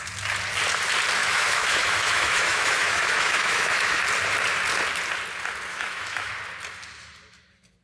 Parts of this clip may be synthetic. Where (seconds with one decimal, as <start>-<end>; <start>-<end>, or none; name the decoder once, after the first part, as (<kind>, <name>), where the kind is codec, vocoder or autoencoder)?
1.2-4.0 (autoencoder, DAC-VAE); 5.7-6.3